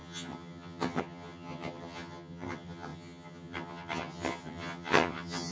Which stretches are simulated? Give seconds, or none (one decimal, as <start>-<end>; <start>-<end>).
0.0-5.5